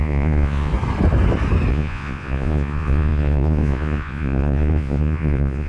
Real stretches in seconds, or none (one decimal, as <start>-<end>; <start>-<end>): 0.7-1.7